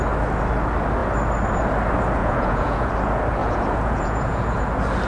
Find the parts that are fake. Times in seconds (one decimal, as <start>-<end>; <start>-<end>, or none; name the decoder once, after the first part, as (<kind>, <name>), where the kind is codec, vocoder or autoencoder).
2.2-2.9 (vocoder, Vocos); 3.4-4.6